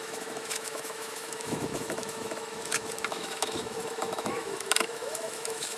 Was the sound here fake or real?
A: fake